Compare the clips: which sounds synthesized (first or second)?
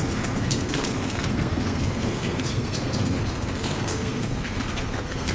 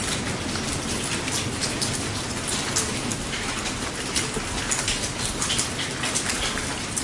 first